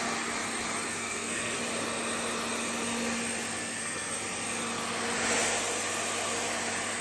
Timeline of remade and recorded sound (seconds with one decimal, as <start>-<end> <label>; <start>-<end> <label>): 0.0-0.9 recorded; 0.9-1.6 remade; 1.6-3.6 recorded; 3.6-4.1 remade; 4.1-7.0 recorded